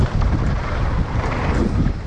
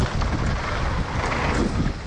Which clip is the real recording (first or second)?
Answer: second